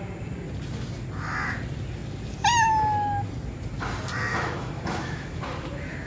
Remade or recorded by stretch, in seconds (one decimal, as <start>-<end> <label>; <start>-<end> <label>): 0.0-4.3 recorded; 4.3-5.4 remade; 5.4-6.1 recorded